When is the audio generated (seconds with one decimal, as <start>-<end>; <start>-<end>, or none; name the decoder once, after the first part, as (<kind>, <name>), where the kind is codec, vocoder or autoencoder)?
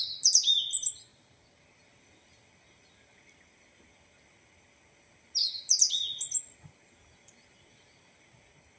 none